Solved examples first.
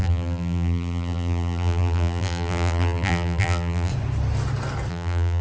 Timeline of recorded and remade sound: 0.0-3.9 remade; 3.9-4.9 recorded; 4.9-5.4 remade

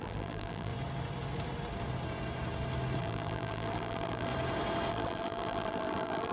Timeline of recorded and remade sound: 0.0-0.7 remade; 0.7-3.0 recorded; 3.0-4.3 remade; 4.3-4.9 recorded; 4.9-6.3 remade

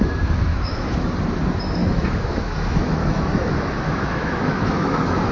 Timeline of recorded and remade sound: 0.0-0.5 recorded; 0.5-1.1 remade; 1.1-1.8 recorded; 1.8-5.3 remade

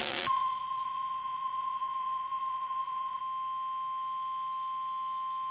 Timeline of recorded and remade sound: 0.0-3.2 remade; 3.2-5.5 recorded

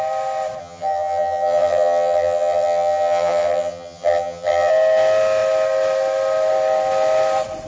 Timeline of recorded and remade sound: 0.0-0.6 recorded; 0.6-4.7 remade; 4.7-7.7 recorded

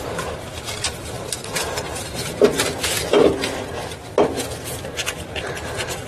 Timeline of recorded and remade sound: 0.0-2.5 remade; 2.5-5.0 recorded; 5.0-6.1 remade

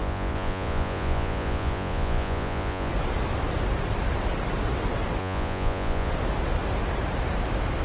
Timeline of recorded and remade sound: 0.0-2.9 remade; 2.9-5.2 recorded; 5.2-6.1 remade; 6.1-7.8 recorded